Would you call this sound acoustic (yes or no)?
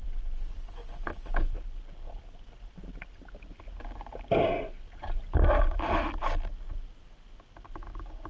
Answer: yes